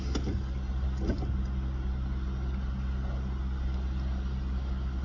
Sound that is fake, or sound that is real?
real